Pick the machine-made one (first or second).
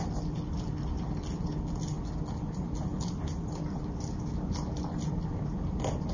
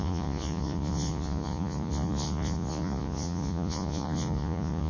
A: second